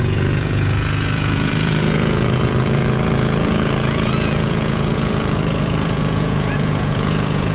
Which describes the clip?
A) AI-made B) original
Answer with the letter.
A